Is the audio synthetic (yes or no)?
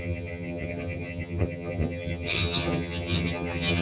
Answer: yes